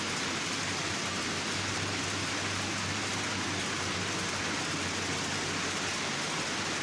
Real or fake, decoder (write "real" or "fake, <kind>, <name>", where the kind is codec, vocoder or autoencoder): real